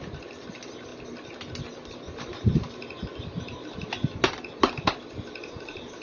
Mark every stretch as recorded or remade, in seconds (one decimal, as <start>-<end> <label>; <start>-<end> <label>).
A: 0.0-6.0 recorded